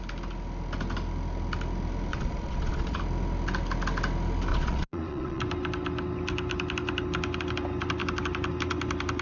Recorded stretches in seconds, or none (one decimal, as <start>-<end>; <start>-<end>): 0.0-2.1; 3.0-4.5; 5.4-9.2